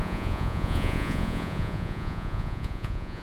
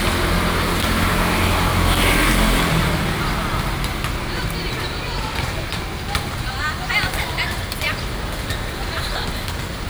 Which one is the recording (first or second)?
second